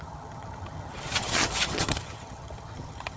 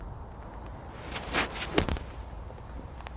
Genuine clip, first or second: second